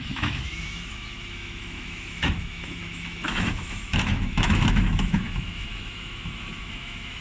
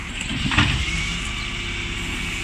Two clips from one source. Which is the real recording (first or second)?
second